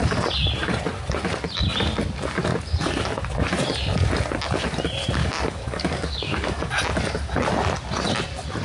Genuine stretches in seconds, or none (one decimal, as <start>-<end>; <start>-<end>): 0.0-5.2; 6.7-8.6